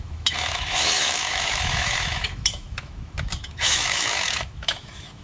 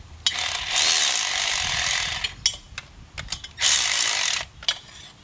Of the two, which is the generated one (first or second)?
first